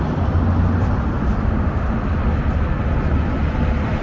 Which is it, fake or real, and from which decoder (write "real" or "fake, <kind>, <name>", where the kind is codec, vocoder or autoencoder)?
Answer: real